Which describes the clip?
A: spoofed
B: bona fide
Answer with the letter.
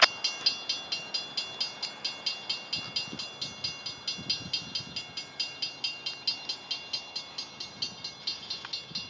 B